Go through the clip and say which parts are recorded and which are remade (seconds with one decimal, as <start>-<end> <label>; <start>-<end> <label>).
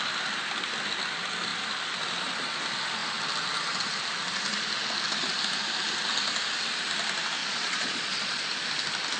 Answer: 0.0-7.4 recorded; 7.4-8.4 remade; 8.4-9.2 recorded